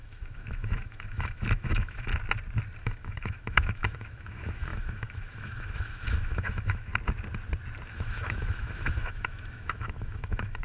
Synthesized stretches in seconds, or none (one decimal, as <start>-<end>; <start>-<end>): 0.0-2.1; 2.8-6.9; 7.9-10.6